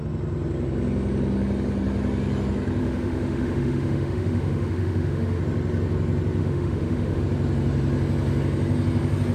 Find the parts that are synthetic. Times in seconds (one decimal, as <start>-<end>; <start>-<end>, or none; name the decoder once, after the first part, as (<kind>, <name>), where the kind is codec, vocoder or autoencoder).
2.8-5.4 (autoencoder, DAC-VAE); 6.4-7.2